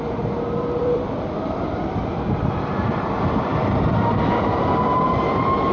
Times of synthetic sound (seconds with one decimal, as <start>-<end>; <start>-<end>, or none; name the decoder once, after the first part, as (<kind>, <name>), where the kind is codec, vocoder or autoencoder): 0.8-3.0 (vocoder, BigVGAN v2); 3.5-4.4